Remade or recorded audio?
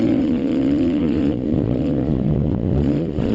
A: remade